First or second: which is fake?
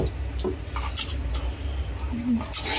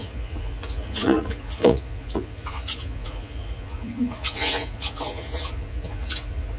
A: second